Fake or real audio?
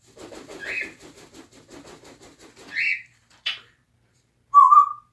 real